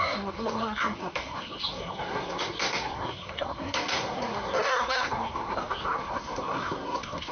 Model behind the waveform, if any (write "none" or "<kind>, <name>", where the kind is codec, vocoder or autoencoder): codec, SNAC